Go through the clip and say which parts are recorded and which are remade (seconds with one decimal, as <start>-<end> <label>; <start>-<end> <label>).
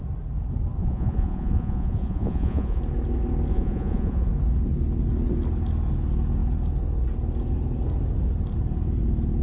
0.0-0.8 recorded; 0.8-2.8 remade; 2.8-3.5 recorded; 3.5-4.3 remade; 4.3-9.4 recorded